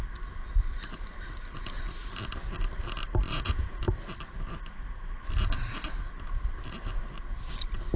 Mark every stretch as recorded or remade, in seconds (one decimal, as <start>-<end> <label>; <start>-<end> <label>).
0.0-3.3 recorded; 3.3-3.9 remade; 3.9-8.0 recorded